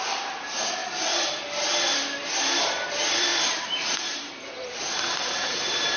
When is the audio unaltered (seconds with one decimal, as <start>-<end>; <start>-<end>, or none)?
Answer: 0.8-2.2